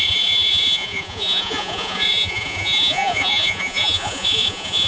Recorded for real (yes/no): no